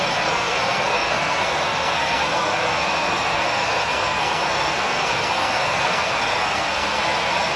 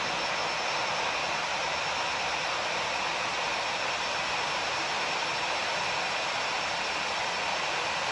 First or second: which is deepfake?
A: first